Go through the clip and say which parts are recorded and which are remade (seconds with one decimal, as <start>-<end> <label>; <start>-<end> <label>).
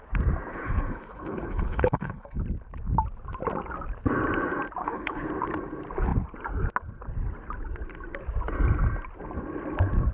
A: 0.0-0.5 recorded; 0.5-2.4 remade; 2.4-4.8 recorded; 4.8-5.3 remade; 5.3-10.1 recorded